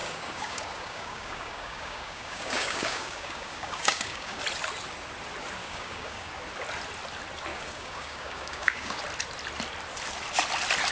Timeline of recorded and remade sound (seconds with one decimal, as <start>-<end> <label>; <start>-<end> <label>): 0.0-4.4 remade; 4.4-5.6 recorded; 5.6-6.3 remade; 6.3-7.5 recorded; 7.5-9.0 remade; 9.0-10.9 recorded